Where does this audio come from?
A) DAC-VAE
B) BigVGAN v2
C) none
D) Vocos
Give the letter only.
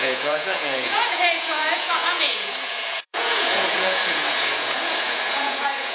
D